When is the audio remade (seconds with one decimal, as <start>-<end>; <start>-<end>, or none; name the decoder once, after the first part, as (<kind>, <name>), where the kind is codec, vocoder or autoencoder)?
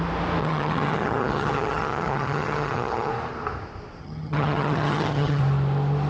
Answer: 0.4-3.1 (vocoder, HiFi-GAN); 4.0-5.4